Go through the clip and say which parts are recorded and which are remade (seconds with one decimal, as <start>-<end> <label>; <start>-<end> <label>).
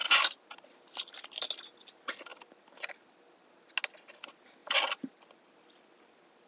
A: 0.0-0.6 remade; 0.6-6.5 recorded